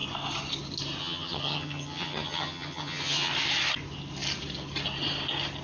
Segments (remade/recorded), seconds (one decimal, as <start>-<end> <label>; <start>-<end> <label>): 0.0-1.0 recorded; 1.0-3.3 remade; 3.3-5.6 recorded